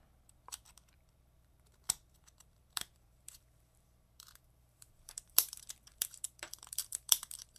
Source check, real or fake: fake